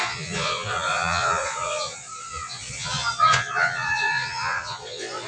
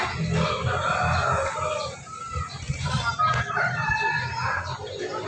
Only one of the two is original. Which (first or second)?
second